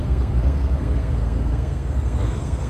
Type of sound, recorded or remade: remade